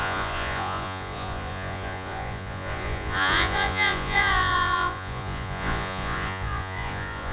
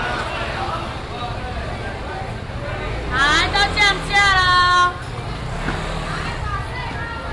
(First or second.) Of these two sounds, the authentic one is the second